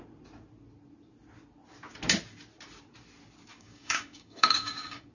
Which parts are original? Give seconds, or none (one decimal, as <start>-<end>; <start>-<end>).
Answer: 0.0-3.5